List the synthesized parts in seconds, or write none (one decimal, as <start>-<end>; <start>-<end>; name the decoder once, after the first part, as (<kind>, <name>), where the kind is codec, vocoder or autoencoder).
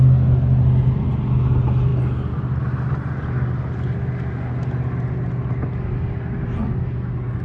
none